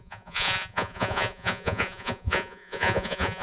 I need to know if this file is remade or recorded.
remade